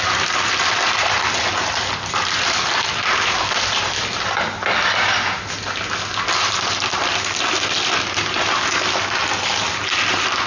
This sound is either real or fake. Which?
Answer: real